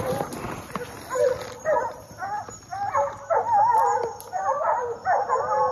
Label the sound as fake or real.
real